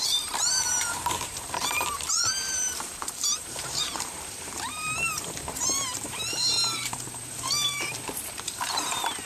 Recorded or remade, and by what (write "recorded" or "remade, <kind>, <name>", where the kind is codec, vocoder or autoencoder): remade, vocoder, BigVGAN v2